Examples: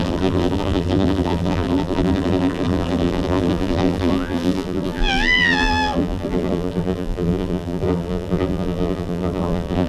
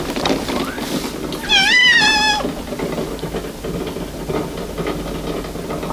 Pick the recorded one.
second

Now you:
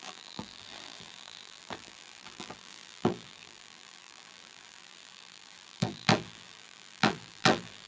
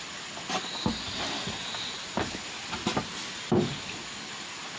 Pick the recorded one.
second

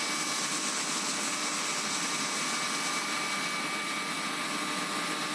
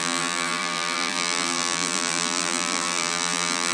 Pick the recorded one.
first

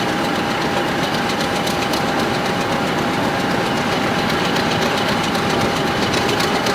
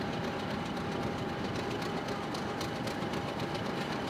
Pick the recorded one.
second